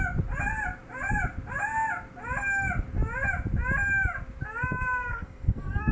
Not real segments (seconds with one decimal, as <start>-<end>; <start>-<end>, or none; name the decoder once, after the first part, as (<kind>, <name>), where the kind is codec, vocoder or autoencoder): 5.1-5.9 (codec, SNAC)